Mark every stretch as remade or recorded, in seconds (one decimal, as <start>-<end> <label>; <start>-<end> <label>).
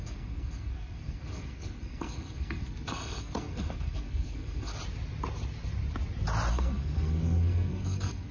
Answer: 0.0-4.7 remade; 4.7-6.5 recorded; 6.5-8.3 remade